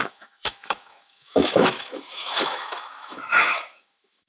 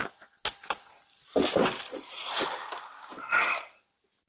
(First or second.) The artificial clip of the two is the first